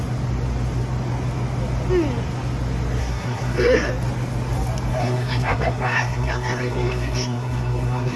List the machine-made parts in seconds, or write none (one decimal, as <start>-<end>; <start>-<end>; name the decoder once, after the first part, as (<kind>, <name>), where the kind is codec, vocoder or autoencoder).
3.0-3.9 (codec, SNAC); 4.9-8.2